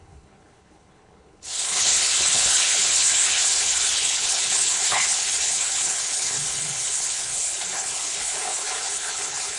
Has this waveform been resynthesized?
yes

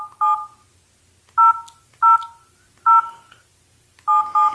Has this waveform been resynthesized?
no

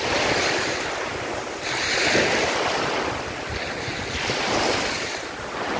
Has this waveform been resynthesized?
no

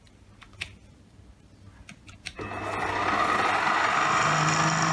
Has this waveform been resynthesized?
no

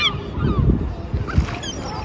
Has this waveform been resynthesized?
no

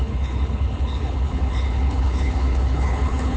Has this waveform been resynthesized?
yes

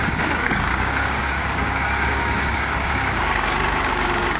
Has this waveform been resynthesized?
yes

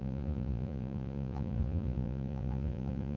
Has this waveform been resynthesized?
yes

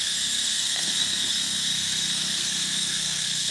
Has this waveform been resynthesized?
yes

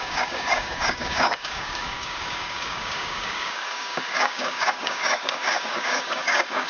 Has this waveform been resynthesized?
yes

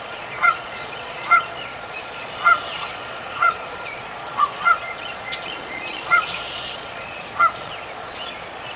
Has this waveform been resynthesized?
yes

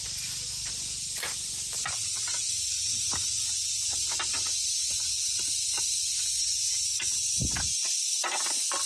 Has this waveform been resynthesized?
no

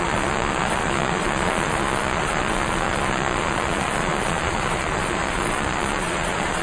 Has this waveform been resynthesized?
yes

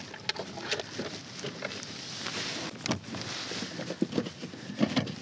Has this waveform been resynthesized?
no